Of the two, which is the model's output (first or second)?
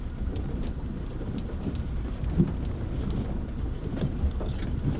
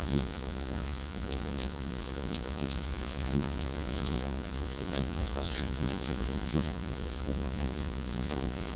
second